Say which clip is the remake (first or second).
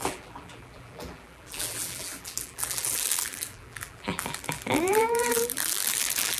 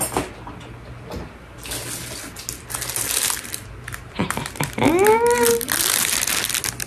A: first